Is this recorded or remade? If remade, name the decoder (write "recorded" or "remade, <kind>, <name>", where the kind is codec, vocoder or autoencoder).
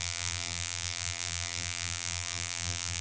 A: remade, vocoder, BigVGAN v2